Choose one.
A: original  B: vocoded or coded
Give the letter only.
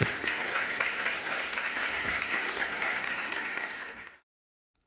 B